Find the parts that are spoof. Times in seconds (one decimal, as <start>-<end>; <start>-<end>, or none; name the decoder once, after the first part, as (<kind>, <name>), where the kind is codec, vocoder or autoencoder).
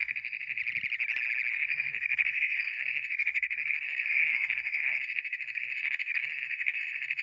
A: 0.0-0.6 (codec, SNAC); 1.5-7.2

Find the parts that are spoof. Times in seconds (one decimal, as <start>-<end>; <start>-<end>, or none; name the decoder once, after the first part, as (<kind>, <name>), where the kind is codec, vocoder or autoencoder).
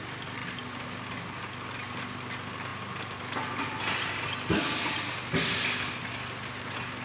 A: none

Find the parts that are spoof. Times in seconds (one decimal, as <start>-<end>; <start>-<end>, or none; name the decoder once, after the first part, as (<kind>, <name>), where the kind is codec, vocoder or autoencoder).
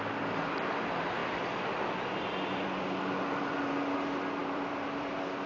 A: 4.4-5.1 (vocoder, BigVGAN v2)